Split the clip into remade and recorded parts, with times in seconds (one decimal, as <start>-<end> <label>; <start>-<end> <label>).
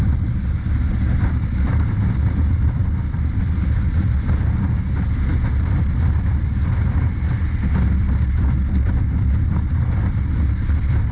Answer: 0.0-11.1 recorded